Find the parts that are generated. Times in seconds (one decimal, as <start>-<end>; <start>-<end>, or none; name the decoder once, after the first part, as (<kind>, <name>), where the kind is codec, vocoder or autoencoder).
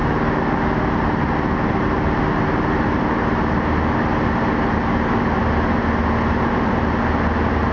none